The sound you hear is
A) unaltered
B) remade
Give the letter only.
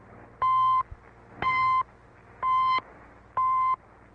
A